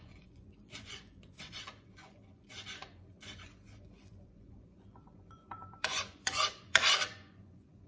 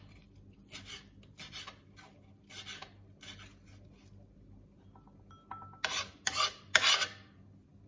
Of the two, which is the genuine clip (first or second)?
second